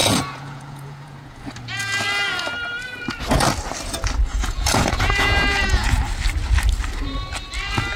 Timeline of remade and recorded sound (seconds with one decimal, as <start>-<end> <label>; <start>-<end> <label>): 0.0-1.4 remade; 1.4-4.3 recorded; 4.3-6.0 remade; 6.0-8.0 recorded